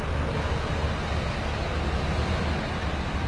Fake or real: real